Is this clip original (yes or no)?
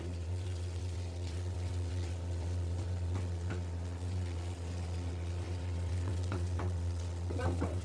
no